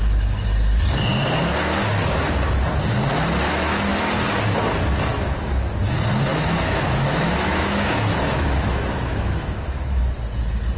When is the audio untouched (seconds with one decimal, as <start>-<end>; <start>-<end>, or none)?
0.0-6.3; 10.0-10.8